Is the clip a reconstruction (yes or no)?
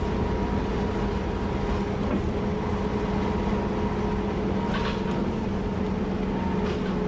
no